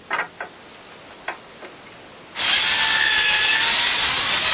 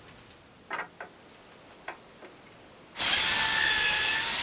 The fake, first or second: second